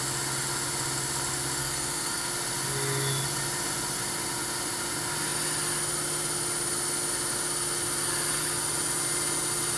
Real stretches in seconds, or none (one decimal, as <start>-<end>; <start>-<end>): 0.0-1.6; 2.3-9.8